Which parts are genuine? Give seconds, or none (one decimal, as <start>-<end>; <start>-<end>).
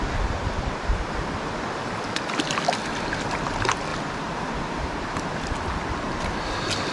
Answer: 0.0-6.9